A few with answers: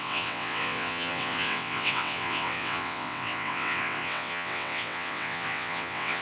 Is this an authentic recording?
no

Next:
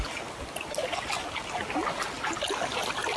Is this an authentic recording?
yes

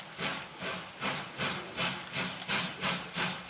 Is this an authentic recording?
yes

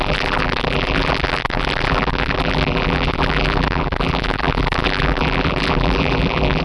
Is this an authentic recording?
no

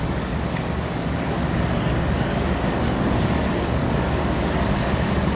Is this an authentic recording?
no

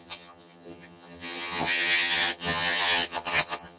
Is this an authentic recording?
no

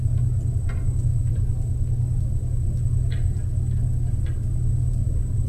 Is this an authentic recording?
yes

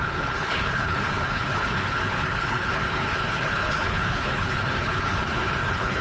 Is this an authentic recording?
no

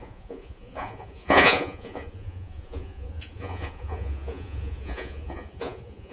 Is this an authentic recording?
no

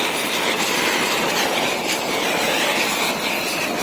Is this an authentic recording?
yes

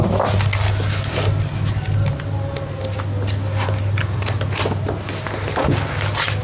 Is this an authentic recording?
yes